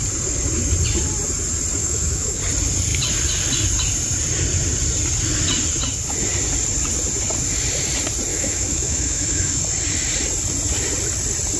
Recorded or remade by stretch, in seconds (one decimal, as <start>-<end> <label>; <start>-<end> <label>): 0.0-1.8 recorded; 1.8-2.4 remade; 2.4-8.3 recorded; 8.3-9.6 remade; 9.6-11.6 recorded